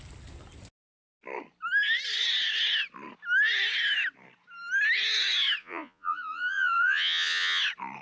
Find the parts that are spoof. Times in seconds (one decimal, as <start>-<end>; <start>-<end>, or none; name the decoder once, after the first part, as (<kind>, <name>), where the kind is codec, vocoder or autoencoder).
5.6-7.6 (vocoder, Vocos)